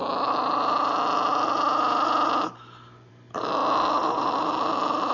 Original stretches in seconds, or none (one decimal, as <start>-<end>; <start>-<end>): 0.0-5.1